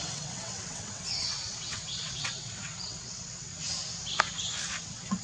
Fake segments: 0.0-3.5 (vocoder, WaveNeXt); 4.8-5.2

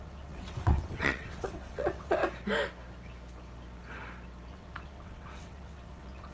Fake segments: 0.0-2.2 (vocoder, WaveNeXt); 4.5-6.3

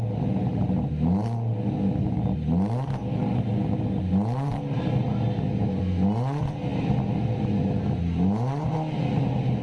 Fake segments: none

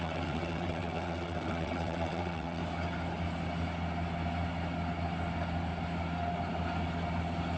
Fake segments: 0.0-2.6 (vocoder, WaveNeXt)

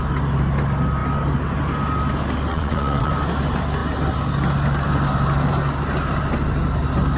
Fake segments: 2.5-3.1 (vocoder, WaveNeXt)

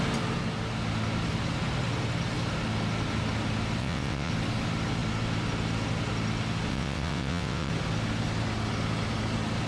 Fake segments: 3.8-4.3 (vocoder, WaveNeXt); 6.7-7.7

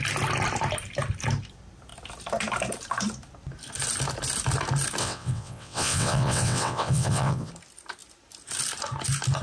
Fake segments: 5.0-7.5 (vocoder, WaveNeXt)

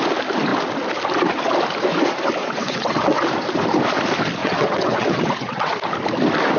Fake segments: 2.4-3.2 (vocoder, WaveNeXt); 4.4-5.7